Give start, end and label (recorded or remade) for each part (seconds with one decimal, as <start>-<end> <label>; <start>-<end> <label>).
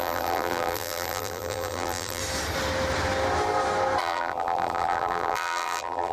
0.0-2.2 remade; 2.2-4.0 recorded; 4.0-6.1 remade